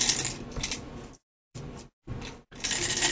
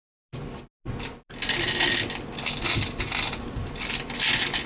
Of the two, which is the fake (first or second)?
first